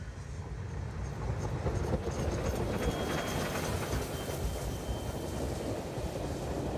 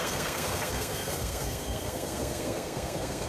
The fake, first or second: second